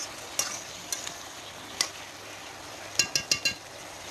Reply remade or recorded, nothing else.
recorded